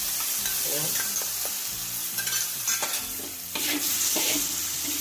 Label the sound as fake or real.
real